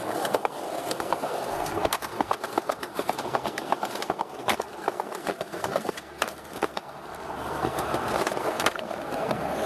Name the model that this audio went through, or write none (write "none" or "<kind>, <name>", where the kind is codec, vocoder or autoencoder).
codec, SNAC